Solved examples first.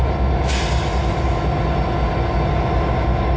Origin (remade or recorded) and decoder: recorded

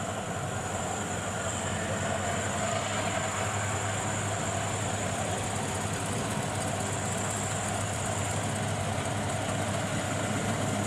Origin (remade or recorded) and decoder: recorded